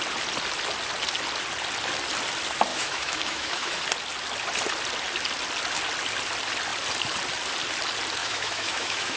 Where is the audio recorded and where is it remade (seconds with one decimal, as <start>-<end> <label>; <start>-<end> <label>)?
0.0-2.7 recorded; 2.7-3.8 remade; 3.8-8.2 recorded; 8.2-9.2 remade